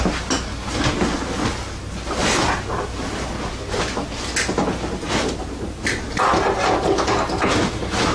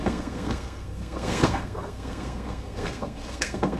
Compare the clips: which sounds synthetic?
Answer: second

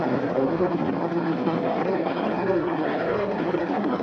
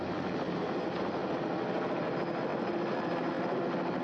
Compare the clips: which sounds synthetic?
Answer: first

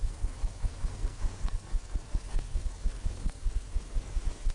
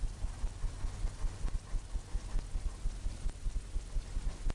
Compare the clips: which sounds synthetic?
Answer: first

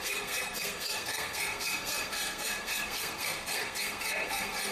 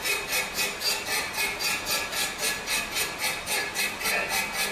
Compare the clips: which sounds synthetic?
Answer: first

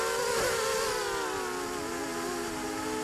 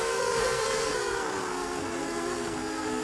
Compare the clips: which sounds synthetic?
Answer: second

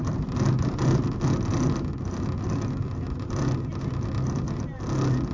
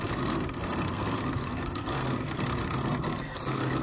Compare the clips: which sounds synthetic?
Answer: second